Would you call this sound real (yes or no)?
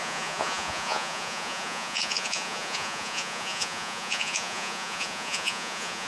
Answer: no